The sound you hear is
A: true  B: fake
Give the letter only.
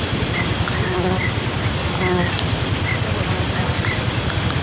A